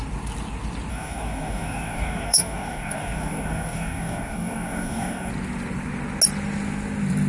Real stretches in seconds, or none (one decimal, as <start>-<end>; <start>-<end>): 0.0-0.9; 5.3-7.3